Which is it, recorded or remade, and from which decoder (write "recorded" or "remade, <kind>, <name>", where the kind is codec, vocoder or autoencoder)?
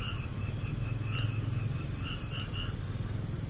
recorded